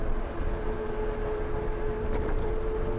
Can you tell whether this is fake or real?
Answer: real